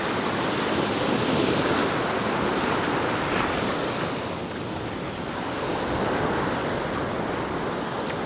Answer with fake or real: real